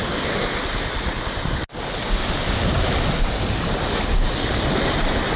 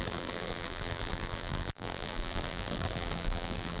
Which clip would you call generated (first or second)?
second